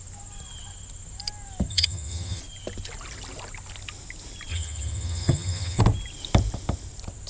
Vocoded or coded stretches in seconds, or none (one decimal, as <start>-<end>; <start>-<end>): 1.7-2.4; 4.5-5.8